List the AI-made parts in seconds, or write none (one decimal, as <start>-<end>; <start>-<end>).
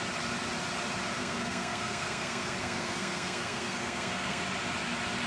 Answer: 1.2-4.4